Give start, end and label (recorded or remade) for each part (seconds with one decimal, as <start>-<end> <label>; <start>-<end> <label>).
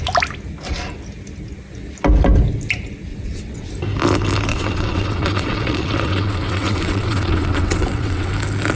0.0-3.1 recorded; 3.1-3.7 remade; 3.7-4.5 recorded; 4.5-8.3 remade; 8.3-8.8 recorded